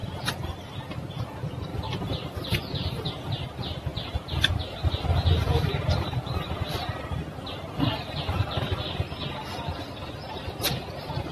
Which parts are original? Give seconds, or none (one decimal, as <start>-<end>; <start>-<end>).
0.0-1.7; 3.1-11.3